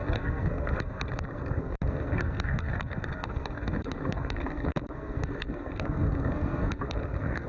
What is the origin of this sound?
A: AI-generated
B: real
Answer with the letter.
A